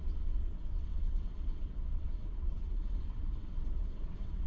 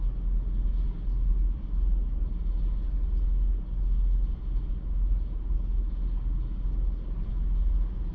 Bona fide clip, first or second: second